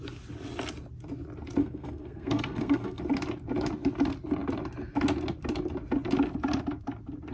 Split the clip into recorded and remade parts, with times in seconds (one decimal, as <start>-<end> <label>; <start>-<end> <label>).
0.0-1.6 recorded; 1.6-3.0 remade; 3.0-7.3 recorded

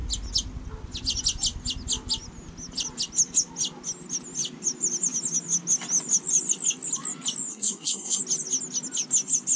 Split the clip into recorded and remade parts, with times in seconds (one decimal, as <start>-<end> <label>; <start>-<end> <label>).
0.0-7.5 recorded; 7.5-8.2 remade; 8.2-9.6 recorded

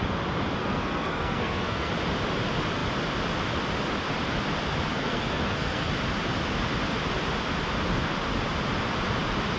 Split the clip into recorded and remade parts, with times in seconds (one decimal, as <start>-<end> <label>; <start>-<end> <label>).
0.0-0.6 recorded; 0.6-1.9 remade; 1.9-4.9 recorded; 4.9-5.9 remade; 5.9-9.6 recorded